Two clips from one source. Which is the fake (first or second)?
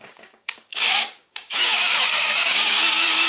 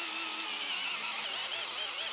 first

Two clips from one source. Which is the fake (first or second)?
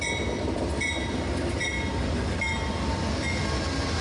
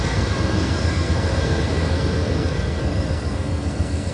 second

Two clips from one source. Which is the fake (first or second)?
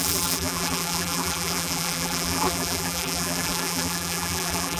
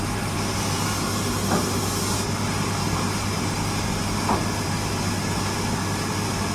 first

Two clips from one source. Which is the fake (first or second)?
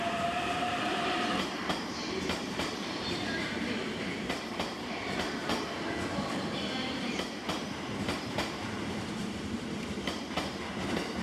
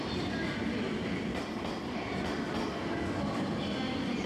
first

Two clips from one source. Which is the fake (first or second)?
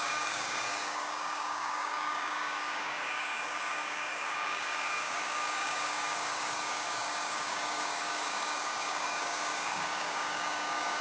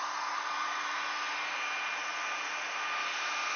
first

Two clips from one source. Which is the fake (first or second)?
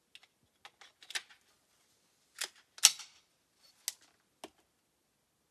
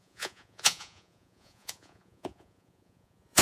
second